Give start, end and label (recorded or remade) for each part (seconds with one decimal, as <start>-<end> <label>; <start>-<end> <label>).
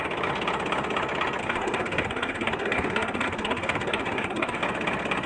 0.0-1.4 recorded; 1.4-4.6 remade; 4.6-5.3 recorded